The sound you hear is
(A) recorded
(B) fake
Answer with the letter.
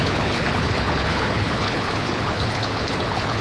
B